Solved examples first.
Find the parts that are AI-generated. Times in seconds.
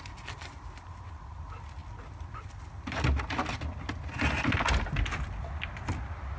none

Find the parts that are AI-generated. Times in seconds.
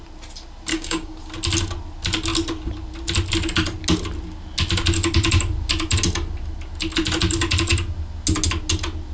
0.7-1.2 (codec, DAC)